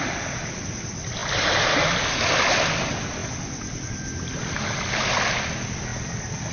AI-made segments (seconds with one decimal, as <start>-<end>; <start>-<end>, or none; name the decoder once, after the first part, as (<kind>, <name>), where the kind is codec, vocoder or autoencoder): none